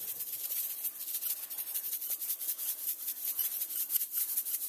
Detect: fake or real fake